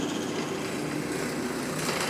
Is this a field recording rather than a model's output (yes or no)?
yes